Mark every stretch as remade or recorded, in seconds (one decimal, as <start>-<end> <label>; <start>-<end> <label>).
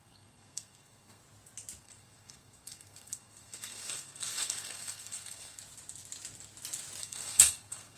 0.0-1.2 remade; 1.2-1.8 recorded; 1.8-5.6 remade; 5.6-7.0 recorded; 7.0-8.0 remade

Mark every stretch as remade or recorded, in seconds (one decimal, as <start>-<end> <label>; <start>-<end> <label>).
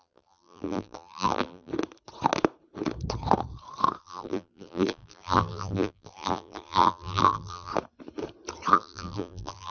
0.0-1.7 remade; 1.7-4.0 recorded; 4.0-7.7 remade; 7.7-8.7 recorded; 8.7-9.7 remade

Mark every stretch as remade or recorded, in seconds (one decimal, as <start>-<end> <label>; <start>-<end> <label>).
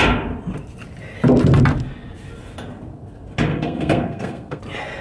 0.0-3.5 recorded; 3.5-4.6 remade; 4.6-5.0 recorded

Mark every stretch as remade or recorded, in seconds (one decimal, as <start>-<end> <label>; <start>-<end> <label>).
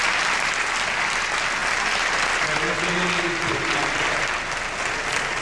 0.0-5.4 recorded